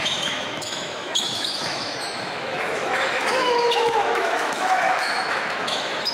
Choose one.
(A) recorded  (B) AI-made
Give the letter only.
B